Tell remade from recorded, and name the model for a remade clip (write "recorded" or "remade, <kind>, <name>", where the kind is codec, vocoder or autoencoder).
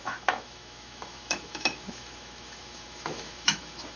remade, autoencoder, DAC-VAE